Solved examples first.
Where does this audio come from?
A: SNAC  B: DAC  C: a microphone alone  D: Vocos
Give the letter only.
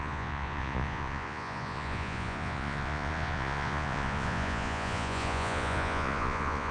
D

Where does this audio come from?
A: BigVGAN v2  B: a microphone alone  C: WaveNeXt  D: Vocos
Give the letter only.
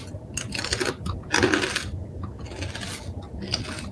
B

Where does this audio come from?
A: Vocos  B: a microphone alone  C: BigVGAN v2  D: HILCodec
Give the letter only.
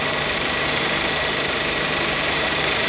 C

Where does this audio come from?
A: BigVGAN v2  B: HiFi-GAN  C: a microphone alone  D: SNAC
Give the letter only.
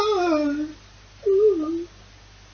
C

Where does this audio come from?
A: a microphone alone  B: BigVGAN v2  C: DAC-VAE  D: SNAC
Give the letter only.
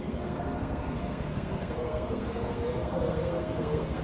D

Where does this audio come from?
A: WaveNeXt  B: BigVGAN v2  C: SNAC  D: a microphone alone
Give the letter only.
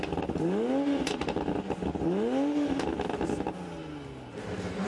D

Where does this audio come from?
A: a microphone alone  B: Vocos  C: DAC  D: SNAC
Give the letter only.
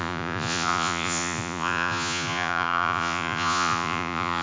B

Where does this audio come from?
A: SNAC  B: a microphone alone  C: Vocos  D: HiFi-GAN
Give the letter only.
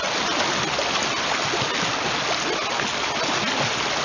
B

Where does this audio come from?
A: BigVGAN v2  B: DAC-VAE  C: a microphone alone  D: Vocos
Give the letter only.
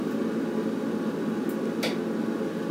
C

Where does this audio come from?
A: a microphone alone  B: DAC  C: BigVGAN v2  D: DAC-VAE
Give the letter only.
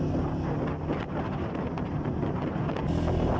A